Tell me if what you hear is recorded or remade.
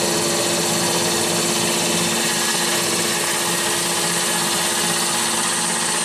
recorded